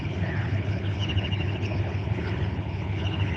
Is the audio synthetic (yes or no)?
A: yes